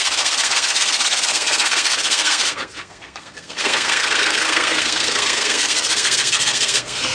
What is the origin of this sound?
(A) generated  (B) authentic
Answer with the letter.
A